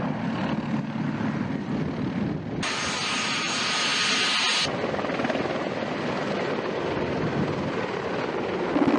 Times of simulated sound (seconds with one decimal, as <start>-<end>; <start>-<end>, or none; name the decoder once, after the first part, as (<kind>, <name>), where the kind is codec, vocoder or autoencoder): none